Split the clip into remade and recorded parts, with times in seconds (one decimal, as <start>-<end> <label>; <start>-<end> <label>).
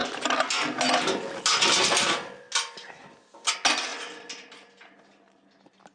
0.0-5.9 recorded